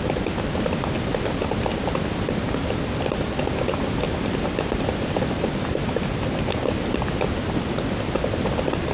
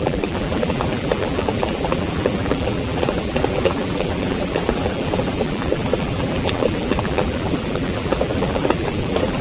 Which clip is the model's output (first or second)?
second